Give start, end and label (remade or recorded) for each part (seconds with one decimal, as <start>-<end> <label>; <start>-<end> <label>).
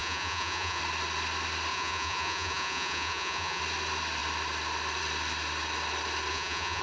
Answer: 0.0-0.8 remade; 0.8-1.7 recorded; 1.7-3.6 remade; 3.6-6.3 recorded; 6.3-6.8 remade